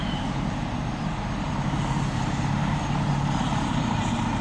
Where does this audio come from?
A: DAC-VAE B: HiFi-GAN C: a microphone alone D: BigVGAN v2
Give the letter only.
D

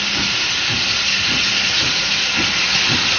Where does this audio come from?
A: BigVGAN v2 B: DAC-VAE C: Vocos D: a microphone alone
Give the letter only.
D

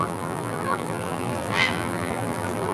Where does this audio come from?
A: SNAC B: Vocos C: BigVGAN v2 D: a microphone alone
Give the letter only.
C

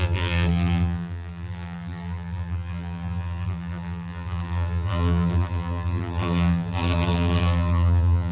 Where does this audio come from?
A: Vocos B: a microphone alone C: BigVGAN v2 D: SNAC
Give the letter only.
C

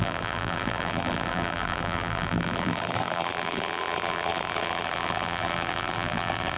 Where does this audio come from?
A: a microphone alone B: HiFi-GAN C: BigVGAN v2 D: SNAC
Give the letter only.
C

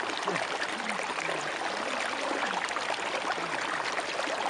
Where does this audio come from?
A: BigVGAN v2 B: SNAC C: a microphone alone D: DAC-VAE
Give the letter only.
C